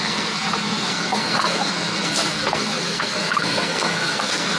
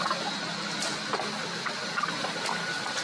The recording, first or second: second